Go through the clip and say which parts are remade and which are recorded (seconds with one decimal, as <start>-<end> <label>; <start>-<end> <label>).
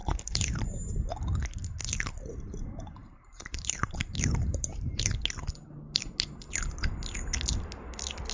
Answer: 0.0-0.6 remade; 0.6-3.0 recorded; 3.0-5.2 remade; 5.2-8.3 recorded